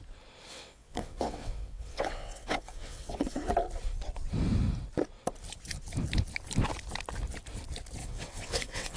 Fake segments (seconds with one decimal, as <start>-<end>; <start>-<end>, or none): 0.5-3.5; 8.0-9.0